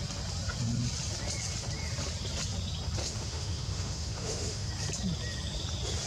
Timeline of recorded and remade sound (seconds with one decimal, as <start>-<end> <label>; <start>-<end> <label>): 0.0-3.0 recorded; 3.0-4.7 remade; 4.7-6.1 recorded